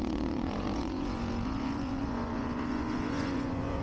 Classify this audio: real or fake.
fake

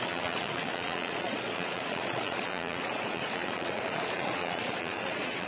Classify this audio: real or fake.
fake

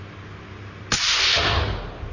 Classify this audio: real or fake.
real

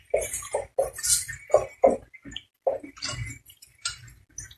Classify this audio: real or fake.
real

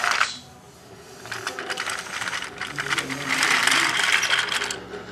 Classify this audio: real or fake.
real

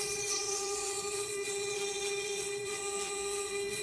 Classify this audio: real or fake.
fake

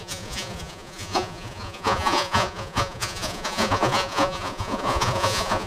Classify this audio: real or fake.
fake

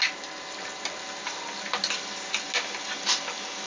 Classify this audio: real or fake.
real